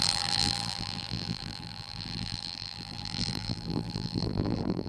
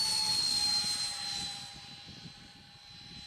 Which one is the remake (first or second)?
first